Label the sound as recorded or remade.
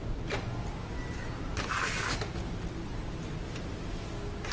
recorded